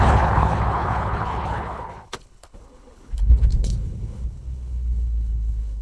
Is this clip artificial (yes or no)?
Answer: yes